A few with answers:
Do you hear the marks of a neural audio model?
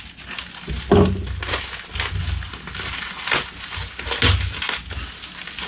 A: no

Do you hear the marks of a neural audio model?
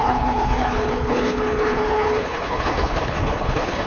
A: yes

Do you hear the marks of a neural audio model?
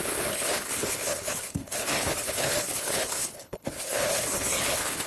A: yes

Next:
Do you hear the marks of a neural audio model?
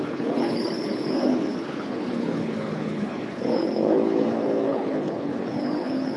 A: yes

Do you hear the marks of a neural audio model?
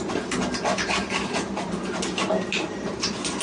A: no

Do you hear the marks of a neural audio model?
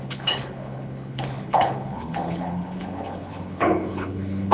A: yes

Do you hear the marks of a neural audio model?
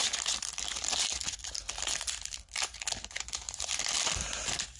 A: no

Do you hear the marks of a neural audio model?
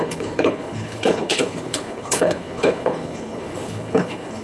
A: yes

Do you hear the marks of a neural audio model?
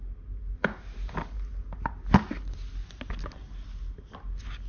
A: no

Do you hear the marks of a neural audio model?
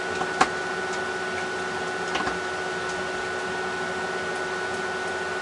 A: no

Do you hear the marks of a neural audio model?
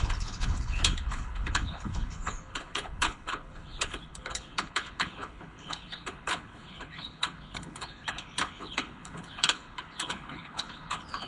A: yes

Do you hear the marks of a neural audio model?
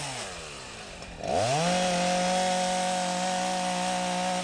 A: no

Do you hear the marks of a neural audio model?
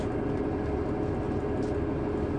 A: no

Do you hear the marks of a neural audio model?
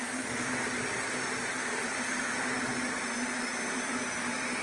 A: no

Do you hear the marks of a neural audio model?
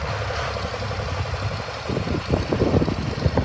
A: no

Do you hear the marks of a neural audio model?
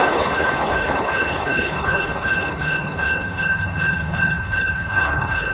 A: yes